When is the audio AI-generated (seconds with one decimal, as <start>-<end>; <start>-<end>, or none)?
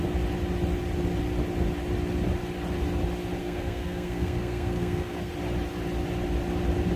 3.4-5.3